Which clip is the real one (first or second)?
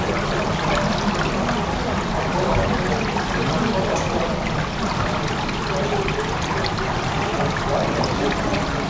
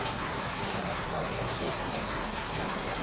first